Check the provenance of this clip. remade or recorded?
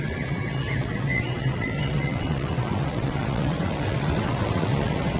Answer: remade